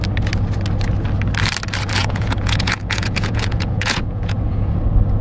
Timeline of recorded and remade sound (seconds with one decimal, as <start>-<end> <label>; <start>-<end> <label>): 0.0-2.0 recorded; 2.0-4.8 remade; 4.8-5.2 recorded